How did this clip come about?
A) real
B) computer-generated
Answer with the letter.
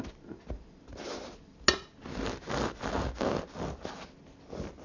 A